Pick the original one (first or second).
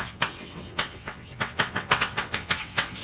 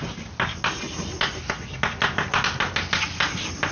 second